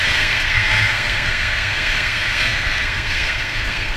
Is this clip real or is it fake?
fake